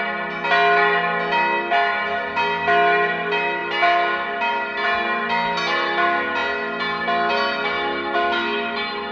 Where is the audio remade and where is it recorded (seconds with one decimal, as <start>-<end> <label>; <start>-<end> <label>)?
0.0-9.1 recorded